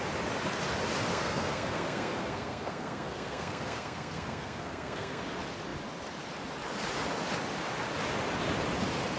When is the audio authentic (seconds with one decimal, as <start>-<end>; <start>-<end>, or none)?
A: 0.0-1.1; 5.2-9.2